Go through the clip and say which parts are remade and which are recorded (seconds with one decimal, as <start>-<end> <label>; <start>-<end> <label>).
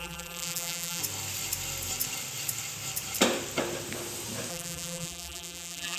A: 0.0-1.0 remade; 1.0-4.5 recorded; 4.5-6.0 remade